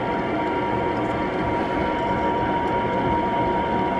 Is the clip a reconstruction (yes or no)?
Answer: no